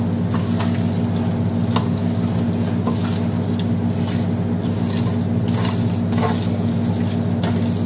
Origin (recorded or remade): recorded